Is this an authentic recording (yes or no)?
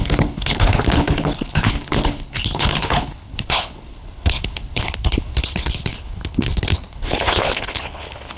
no